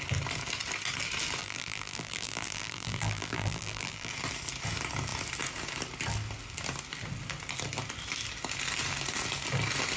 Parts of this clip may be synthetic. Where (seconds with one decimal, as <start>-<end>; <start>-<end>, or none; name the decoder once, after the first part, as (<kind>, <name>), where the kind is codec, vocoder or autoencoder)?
1.4-4.1 (vocoder, BigVGAN v2)